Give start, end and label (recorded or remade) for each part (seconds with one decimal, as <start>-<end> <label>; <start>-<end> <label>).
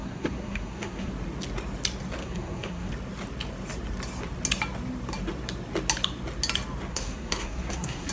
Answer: 0.0-1.1 remade; 1.1-2.2 recorded; 2.2-2.9 remade; 2.9-6.9 recorded; 6.9-8.1 remade